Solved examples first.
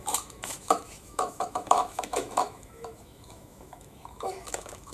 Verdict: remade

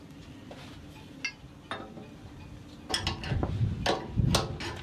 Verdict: recorded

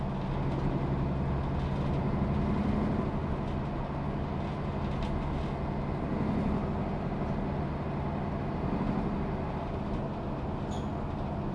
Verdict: recorded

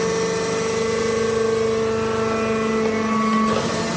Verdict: recorded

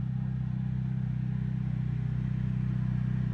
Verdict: recorded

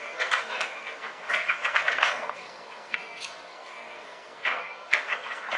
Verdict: remade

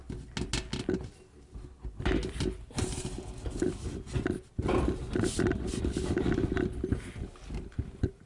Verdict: recorded